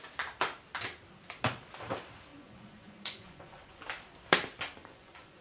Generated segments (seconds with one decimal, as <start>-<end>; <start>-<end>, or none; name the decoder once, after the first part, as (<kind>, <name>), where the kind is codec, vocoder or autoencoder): 2.3-3.8 (vocoder, Vocos); 4.8-5.4